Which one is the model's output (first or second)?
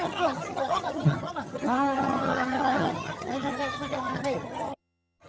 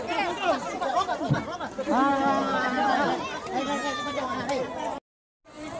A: first